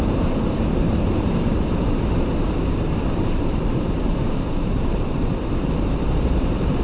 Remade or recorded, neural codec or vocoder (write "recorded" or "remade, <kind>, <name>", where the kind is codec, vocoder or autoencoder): remade, vocoder, BigVGAN v2